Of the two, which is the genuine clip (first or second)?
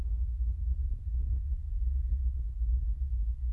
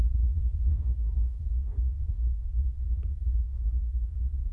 first